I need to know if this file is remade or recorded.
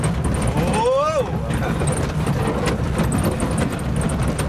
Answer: recorded